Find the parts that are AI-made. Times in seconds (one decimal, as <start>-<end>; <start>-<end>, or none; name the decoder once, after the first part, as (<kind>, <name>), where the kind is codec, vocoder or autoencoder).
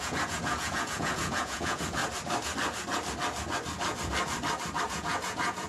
0.0-2.0 (vocoder, Vocos); 4.8-5.7